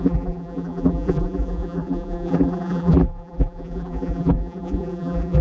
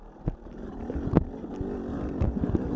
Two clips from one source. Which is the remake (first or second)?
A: first